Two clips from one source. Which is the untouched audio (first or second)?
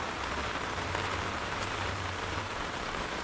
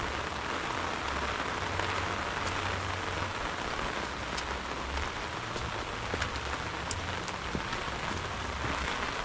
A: second